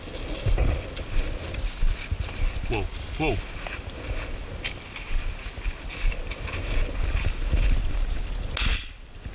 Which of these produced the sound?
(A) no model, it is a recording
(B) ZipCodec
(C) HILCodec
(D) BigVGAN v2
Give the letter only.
A